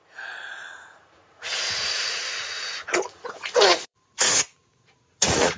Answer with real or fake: fake